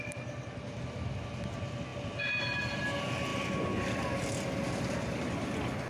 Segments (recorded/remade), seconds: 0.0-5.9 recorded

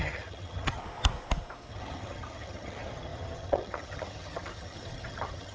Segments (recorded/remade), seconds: 0.0-0.8 remade; 0.8-1.7 recorded; 1.7-5.5 remade

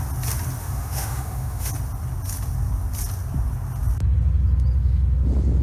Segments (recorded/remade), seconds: 0.0-0.6 recorded; 0.6-1.7 remade; 1.7-5.6 recorded

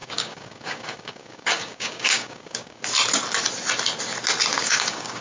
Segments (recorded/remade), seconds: 0.0-2.8 remade; 2.8-4.5 recorded; 4.5-5.2 remade